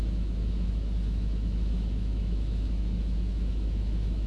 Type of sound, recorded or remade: remade